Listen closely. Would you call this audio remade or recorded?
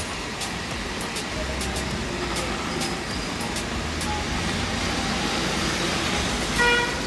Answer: recorded